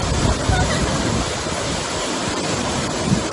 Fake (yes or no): no